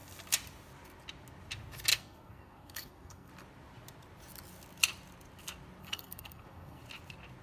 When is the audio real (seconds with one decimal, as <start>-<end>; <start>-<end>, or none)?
0.0-1.9; 3.3-5.8; 6.8-7.4